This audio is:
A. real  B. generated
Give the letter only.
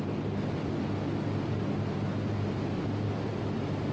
A